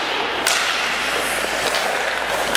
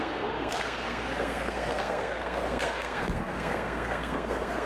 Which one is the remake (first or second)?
second